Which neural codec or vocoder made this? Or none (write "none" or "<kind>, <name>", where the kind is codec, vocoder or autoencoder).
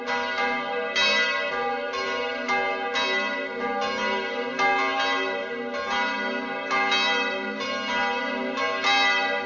none